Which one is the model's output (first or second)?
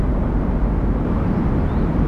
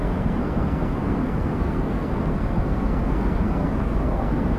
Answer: second